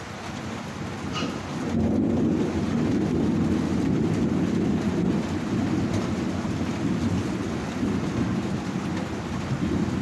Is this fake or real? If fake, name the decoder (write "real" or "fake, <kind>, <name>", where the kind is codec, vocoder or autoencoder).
real